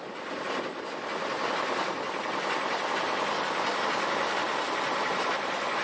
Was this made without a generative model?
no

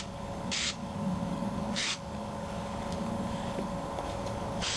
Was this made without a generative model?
no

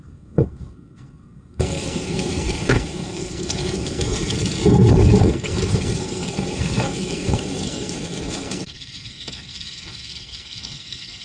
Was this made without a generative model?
no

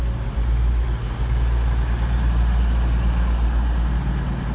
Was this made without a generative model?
yes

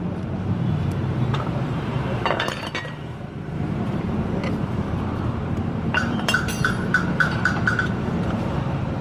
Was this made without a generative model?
no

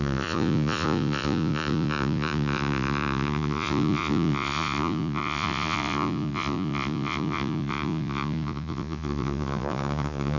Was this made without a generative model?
no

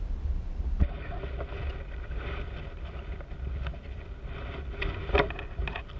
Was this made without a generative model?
yes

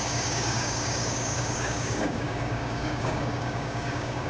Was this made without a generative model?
no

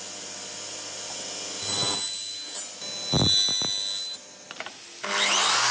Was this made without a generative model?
yes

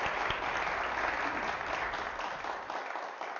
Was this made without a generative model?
yes